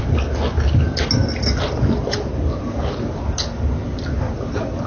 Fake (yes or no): no